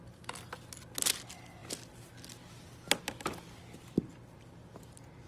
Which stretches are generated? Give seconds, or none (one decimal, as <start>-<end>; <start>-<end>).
none